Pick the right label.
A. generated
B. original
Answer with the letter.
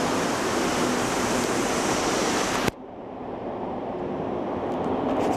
B